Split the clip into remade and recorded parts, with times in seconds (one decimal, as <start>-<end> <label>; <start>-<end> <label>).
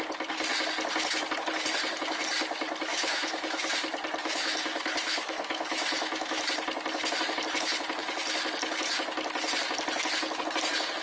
0.0-2.9 recorded; 2.9-3.7 remade; 3.7-4.2 recorded; 4.2-6.4 remade; 6.4-11.0 recorded